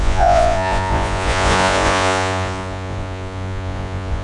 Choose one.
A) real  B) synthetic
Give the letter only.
B